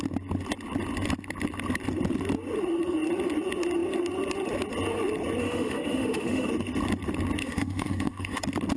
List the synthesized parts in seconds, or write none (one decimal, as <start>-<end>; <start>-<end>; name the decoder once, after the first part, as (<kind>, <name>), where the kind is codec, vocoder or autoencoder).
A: 5.4-6.5 (autoencoder, DAC-VAE); 7.4-8.4